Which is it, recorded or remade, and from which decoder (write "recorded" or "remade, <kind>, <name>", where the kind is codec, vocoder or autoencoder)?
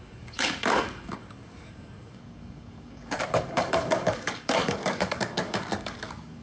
remade, codec, DAC